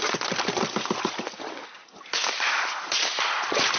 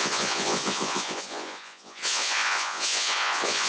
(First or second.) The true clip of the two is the first